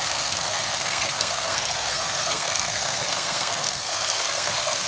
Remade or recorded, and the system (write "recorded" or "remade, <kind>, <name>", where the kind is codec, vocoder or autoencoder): remade, codec, SNAC